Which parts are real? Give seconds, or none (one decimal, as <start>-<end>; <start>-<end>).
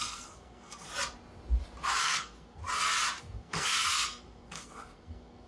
0.9-2.0; 2.6-3.2